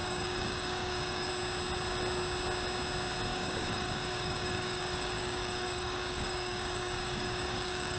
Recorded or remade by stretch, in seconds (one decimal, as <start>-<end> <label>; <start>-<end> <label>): 0.0-1.3 remade; 1.3-3.3 recorded; 3.3-8.0 remade